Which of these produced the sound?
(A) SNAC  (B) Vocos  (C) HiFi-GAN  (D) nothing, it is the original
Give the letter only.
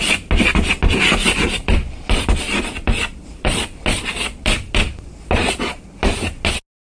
D